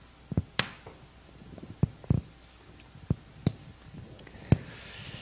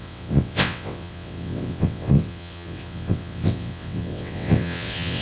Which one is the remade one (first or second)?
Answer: second